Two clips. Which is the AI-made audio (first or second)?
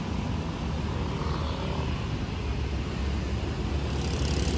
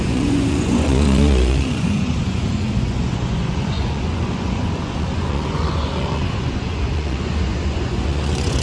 second